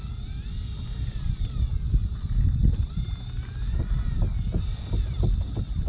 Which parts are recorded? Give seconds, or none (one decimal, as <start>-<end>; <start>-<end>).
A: 0.0-5.9